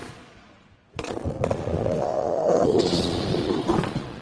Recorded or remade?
remade